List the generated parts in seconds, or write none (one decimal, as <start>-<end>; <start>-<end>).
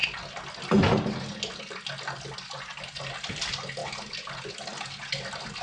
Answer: none